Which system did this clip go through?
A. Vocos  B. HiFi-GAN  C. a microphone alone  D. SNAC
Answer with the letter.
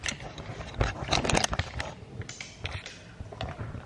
C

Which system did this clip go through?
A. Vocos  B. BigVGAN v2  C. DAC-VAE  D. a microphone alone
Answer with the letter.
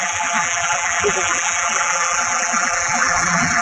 B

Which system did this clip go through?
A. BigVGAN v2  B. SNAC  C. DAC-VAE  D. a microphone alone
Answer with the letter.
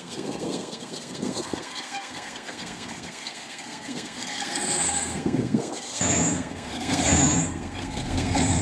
B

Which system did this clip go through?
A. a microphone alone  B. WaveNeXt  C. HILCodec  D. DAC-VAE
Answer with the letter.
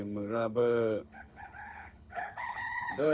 C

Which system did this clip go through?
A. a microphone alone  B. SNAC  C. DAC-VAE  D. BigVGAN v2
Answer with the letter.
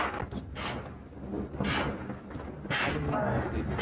A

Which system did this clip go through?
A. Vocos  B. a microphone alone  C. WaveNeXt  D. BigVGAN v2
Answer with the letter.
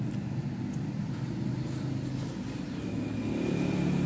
B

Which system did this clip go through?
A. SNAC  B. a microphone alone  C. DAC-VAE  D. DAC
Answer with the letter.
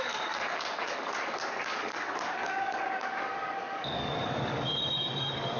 D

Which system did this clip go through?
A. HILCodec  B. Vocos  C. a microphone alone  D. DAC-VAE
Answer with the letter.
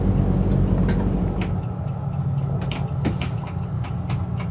C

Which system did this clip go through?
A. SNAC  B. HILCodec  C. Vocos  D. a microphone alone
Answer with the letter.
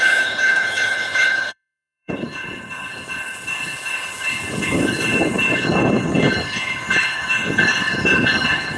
B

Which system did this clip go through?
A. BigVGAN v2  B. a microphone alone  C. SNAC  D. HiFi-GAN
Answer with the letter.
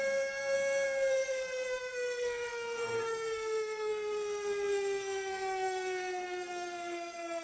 C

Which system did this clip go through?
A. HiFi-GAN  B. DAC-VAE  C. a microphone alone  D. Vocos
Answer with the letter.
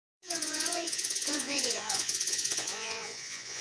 D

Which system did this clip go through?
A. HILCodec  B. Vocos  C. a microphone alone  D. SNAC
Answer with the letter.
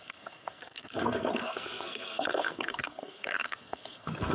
D